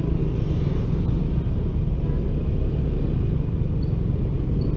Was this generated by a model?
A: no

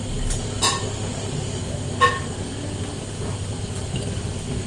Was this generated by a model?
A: no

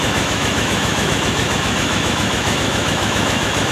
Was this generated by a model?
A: yes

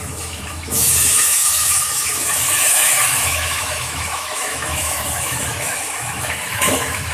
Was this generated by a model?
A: yes